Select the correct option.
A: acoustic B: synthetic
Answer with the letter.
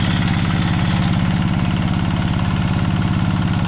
A